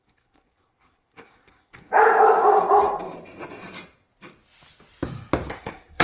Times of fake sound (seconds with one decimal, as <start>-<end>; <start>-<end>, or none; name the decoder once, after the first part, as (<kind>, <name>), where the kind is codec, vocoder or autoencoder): 0.0-1.9 (codec, SNAC); 5.5-6.0

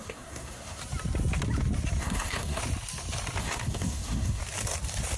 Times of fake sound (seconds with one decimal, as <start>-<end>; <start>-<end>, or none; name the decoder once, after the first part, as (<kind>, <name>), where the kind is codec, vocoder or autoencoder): 0.0-0.8 (codec, SNAC); 2.0-2.6; 3.4-4.4

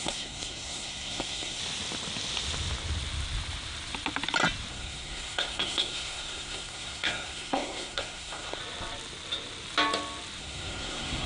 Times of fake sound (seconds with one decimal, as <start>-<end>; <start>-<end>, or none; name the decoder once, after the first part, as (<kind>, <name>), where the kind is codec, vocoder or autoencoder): 0.0-1.6 (codec, SNAC); 4.7-8.6; 10.4-11.3

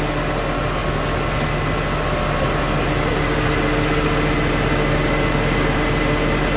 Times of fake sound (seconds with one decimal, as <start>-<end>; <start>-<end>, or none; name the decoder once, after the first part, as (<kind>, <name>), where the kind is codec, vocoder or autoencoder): none

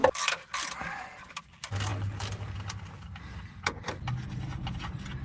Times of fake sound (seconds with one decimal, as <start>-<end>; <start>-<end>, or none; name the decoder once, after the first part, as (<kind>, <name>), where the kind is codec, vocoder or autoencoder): none

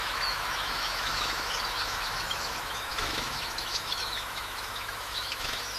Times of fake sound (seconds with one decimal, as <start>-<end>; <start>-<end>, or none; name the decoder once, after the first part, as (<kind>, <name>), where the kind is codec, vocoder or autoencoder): 0.0-5.8 (autoencoder, DAC-VAE)